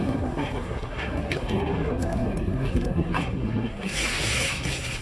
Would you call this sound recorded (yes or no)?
no